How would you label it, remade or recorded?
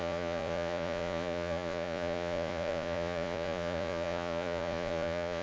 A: remade